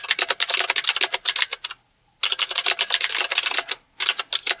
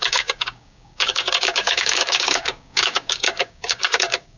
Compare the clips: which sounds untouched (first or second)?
first